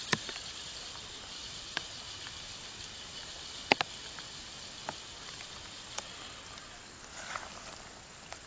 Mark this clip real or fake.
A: real